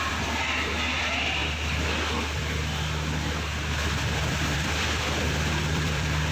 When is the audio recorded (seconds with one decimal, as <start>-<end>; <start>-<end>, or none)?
1.4-4.2